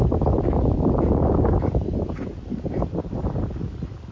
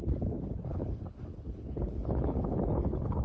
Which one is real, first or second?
first